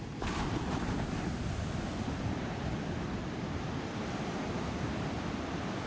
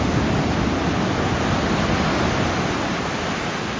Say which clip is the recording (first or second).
second